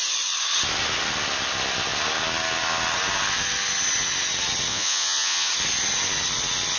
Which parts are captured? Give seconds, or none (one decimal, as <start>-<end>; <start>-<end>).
0.0-4.7; 5.5-6.8